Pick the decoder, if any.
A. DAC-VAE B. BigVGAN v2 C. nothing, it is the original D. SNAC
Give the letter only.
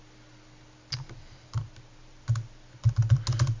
C